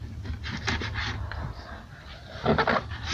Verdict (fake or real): real